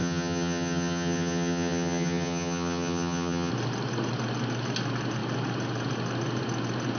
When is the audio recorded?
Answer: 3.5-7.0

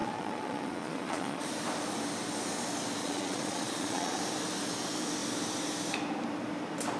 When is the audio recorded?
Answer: 1.5-3.0; 4.2-7.0